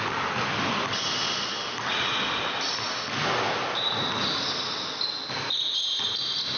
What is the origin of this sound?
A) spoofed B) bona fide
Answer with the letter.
B